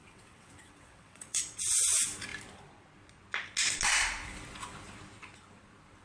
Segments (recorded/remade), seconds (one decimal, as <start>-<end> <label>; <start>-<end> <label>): 0.0-1.4 remade; 1.4-6.0 recorded

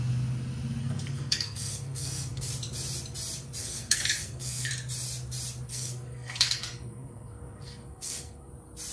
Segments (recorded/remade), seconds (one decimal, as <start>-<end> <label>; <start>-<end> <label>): 0.0-0.8 recorded; 0.8-2.5 remade; 2.5-3.6 recorded; 3.6-4.7 remade; 4.7-5.7 recorded; 5.7-8.5 remade; 8.5-8.9 recorded

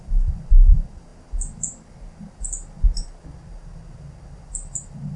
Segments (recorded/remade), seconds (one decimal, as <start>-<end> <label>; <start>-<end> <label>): 0.0-5.2 recorded